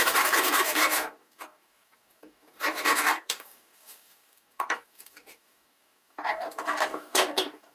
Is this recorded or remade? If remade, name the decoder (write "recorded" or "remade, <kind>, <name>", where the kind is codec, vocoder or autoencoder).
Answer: remade, codec, DAC